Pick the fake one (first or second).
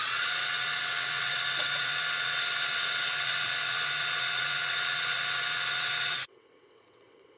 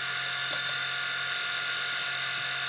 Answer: first